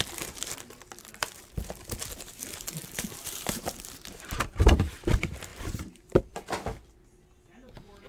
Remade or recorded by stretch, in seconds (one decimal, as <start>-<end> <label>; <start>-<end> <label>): 0.0-2.8 recorded; 2.8-4.9 remade; 4.9-5.5 recorded; 5.5-6.2 remade; 6.2-8.1 recorded